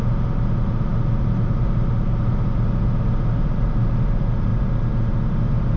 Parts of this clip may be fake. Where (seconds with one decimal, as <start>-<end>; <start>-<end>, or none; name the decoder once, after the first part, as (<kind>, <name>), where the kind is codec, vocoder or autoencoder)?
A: none